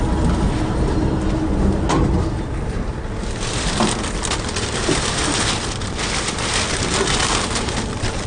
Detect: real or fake real